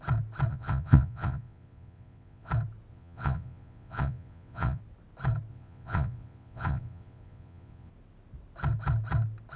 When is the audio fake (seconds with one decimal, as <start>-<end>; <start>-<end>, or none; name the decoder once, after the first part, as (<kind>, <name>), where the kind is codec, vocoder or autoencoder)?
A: 0.5-2.5 (vocoder, Vocos); 2.9-4.8; 5.5-7.9